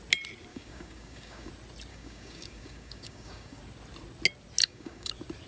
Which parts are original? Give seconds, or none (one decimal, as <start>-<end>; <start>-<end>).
0.0-0.5; 1.5-1.9; 3.6-4.6; 5.1-5.5